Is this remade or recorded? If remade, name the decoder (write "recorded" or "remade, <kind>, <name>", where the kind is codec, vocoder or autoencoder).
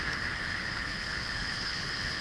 remade, codec, HILCodec